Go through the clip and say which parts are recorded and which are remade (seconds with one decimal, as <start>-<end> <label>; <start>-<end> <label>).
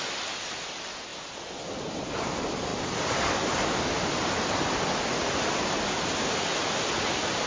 0.0-1.1 recorded; 1.1-1.8 remade; 1.8-2.7 recorded; 2.7-6.4 remade; 6.4-7.5 recorded